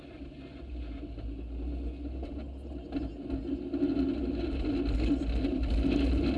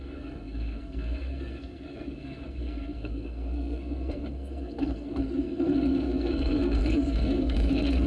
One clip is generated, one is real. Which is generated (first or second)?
second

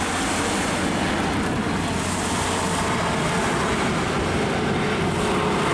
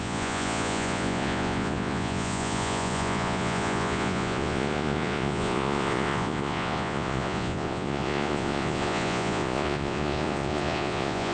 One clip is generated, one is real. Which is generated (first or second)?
second